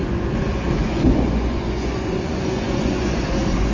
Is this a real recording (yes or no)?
no